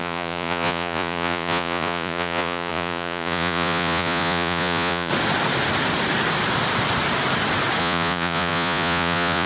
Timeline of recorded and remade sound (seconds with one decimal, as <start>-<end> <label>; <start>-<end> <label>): 0.0-5.1 remade; 5.1-7.8 recorded; 7.8-9.5 remade